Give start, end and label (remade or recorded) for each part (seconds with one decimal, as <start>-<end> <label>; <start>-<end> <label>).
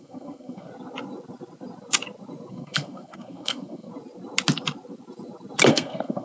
0.0-0.7 remade; 0.7-2.5 recorded; 2.5-3.9 remade; 3.9-5.7 recorded; 5.7-6.2 remade